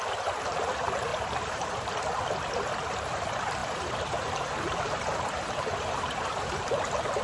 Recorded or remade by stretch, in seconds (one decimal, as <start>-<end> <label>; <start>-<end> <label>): 0.0-1.1 recorded; 1.1-1.9 remade; 1.9-3.6 recorded; 3.6-6.7 remade; 6.7-7.2 recorded